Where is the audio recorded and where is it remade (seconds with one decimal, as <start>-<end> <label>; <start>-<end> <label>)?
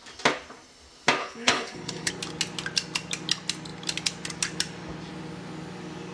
0.0-1.2 recorded; 1.2-2.1 remade; 2.1-6.1 recorded